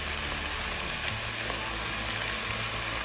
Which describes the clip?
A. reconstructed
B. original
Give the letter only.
B